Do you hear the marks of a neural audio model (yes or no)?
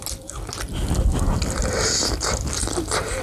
no